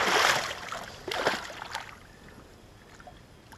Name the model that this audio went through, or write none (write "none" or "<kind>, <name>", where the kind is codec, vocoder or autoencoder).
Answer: none